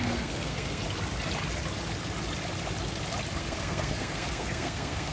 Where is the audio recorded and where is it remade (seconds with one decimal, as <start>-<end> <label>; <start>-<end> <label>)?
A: 0.0-0.8 remade; 0.8-3.4 recorded; 3.4-5.1 remade